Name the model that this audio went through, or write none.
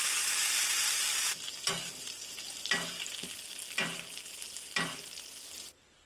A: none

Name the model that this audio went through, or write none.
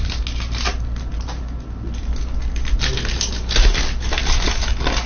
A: none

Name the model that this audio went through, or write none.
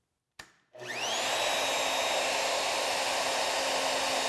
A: none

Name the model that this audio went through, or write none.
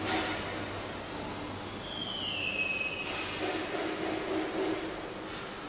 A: none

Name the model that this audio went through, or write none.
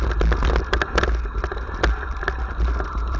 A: none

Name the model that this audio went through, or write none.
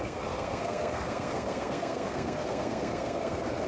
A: codec, SNAC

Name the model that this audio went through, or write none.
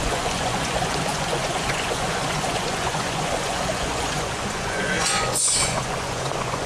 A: vocoder, Vocos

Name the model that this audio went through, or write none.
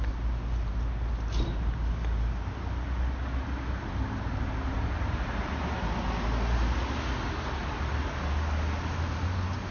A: none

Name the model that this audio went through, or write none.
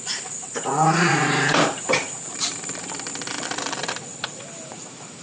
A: vocoder, BigVGAN v2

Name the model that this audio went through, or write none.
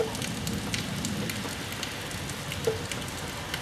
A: none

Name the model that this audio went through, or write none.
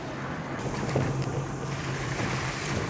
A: none